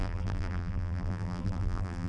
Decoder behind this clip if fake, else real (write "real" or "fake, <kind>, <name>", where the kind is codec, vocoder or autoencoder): fake, vocoder, BigVGAN v2